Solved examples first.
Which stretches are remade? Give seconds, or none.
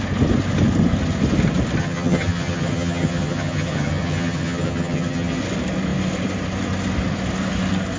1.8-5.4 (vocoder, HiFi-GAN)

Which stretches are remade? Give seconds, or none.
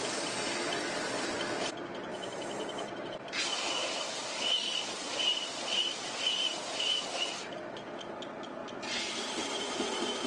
2.1-3.1 (vocoder, BigVGAN v2); 3.7-7.6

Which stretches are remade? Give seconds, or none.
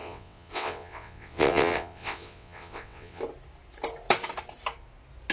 0.0-3.2 (vocoder, WaveNeXt)